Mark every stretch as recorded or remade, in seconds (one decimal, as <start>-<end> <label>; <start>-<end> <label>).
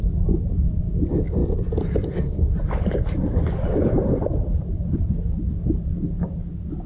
0.0-6.9 remade